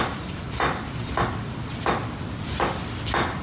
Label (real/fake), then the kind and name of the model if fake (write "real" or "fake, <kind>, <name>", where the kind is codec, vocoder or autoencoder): fake, vocoder, BigVGAN v2